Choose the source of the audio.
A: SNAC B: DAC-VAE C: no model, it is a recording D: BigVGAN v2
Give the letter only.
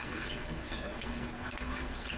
A